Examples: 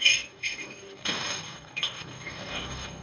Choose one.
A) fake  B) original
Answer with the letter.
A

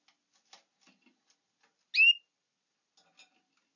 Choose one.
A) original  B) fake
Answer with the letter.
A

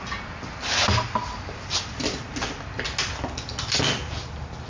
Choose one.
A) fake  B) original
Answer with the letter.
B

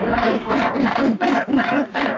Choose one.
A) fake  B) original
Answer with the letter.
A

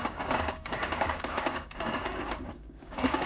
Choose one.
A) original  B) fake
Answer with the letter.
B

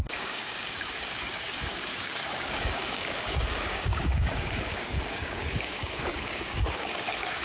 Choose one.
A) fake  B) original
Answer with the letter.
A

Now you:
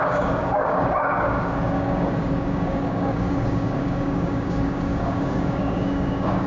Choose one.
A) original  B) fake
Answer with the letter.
B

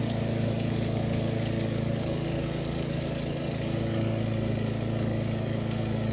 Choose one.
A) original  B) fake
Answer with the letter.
B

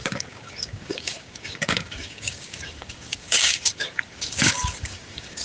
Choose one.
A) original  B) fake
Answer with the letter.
B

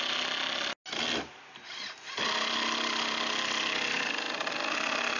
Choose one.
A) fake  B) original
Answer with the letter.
B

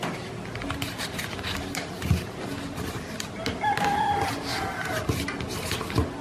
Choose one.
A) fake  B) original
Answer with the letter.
B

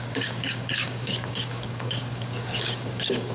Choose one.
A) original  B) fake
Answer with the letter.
B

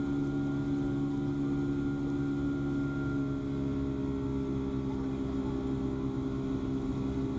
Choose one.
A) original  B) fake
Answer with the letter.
A